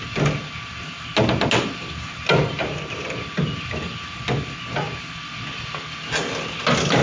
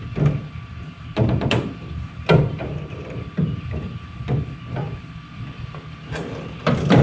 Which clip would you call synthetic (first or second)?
second